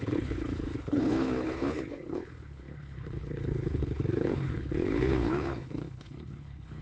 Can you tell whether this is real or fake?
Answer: fake